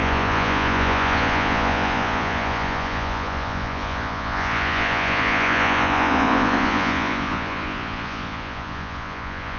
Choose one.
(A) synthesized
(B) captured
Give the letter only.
A